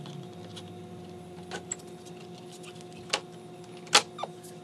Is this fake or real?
real